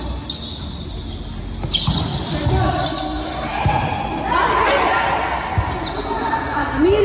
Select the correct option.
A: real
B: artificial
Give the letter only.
A